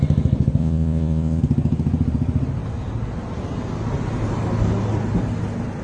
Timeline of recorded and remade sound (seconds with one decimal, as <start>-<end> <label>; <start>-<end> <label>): 0.0-0.6 recorded; 0.6-1.4 remade; 1.4-5.8 recorded